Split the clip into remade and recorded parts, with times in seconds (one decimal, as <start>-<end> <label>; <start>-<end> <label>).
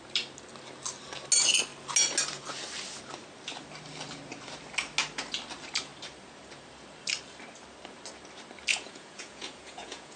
0.0-8.7 recorded; 8.7-10.2 remade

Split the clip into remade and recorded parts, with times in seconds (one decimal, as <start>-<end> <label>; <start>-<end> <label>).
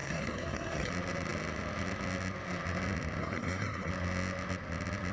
0.0-0.9 remade; 0.9-3.2 recorded; 3.2-3.9 remade; 3.9-5.1 recorded